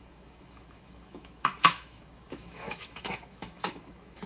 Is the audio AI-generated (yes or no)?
yes